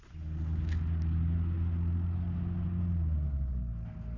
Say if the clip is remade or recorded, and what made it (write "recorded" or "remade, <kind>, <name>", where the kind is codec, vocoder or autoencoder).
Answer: recorded